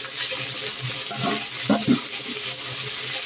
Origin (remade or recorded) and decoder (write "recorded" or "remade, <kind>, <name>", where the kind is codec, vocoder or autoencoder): recorded